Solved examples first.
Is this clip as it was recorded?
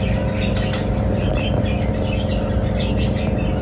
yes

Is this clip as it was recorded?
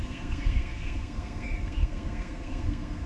no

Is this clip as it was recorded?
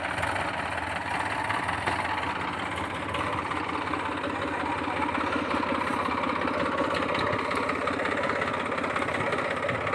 yes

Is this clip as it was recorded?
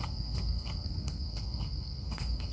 no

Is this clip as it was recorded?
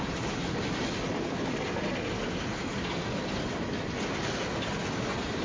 yes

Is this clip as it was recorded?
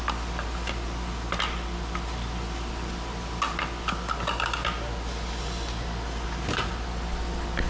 yes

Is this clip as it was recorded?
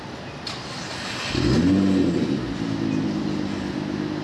yes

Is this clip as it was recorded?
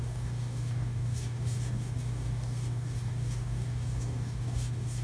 no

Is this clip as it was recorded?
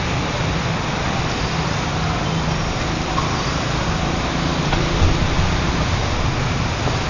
yes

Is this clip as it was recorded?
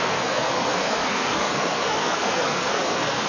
no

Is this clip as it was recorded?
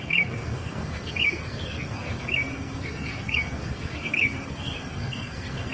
no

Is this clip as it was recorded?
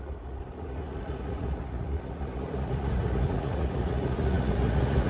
no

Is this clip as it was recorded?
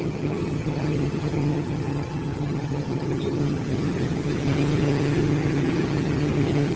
no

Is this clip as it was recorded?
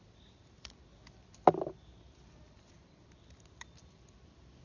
yes